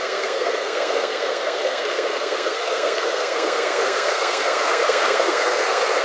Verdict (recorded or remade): remade